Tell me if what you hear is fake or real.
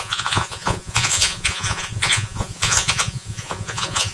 fake